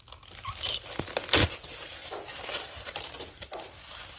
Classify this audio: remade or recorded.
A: recorded